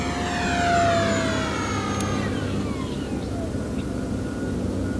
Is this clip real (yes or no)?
yes